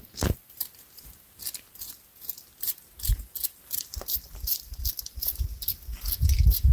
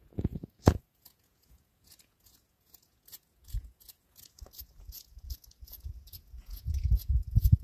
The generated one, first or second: second